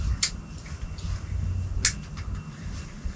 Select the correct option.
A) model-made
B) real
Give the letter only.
B